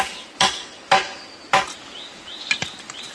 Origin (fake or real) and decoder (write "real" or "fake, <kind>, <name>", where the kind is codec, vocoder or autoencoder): real